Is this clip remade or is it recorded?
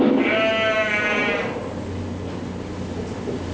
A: recorded